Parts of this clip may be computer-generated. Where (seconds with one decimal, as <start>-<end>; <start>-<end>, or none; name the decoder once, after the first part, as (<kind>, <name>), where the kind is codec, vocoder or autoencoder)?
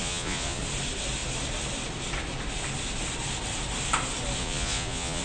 0.0-0.6 (vocoder, Vocos); 4.4-5.2